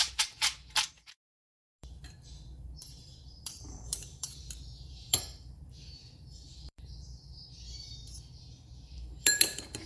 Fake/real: fake